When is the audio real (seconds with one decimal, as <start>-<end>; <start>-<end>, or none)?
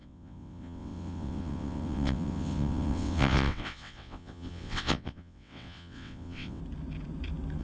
6.6-7.6